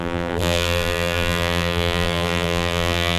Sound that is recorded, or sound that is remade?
remade